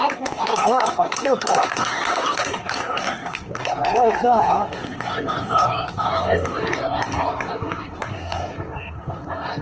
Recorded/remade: remade